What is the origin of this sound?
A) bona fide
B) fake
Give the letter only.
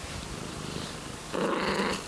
A